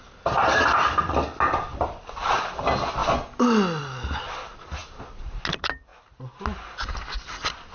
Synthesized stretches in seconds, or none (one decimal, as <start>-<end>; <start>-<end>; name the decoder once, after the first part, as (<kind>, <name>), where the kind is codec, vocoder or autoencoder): none